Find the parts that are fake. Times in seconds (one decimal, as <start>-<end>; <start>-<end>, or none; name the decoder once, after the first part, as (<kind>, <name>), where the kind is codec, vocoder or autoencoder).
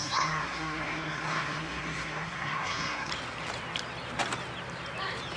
0.0-3.1 (codec, SNAC)